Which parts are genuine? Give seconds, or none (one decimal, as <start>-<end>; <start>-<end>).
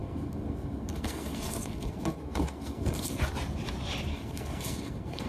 3.2-4.1